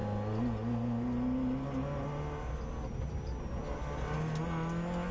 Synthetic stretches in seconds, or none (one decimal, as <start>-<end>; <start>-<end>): none